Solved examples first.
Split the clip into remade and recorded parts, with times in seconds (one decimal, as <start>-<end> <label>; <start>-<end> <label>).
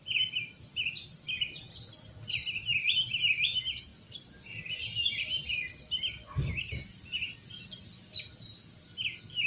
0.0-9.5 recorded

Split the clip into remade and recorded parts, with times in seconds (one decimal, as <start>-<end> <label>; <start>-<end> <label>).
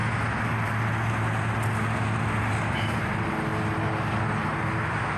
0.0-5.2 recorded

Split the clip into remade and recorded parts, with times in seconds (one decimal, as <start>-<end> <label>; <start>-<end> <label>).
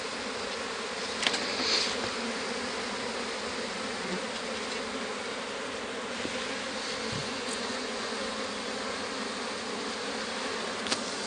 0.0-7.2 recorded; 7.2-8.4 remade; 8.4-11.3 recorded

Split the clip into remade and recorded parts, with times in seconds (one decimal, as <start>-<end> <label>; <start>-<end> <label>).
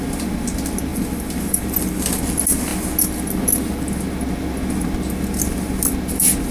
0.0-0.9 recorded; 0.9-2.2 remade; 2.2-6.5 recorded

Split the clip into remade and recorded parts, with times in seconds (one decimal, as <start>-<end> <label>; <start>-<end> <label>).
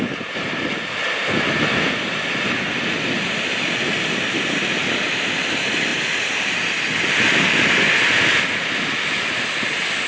0.0-10.1 recorded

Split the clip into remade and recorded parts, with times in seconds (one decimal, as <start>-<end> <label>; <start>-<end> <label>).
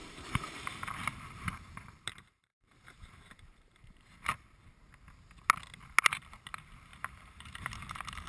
0.0-0.5 remade; 0.5-1.1 recorded; 1.1-4.3 remade; 4.3-6.9 recorded; 6.9-8.3 remade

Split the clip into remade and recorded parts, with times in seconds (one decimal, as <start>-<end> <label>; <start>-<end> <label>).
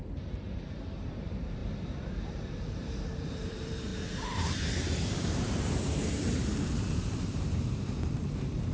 0.0-1.6 remade; 1.6-2.1 recorded; 2.1-3.9 remade; 3.9-4.8 recorded; 4.8-8.7 remade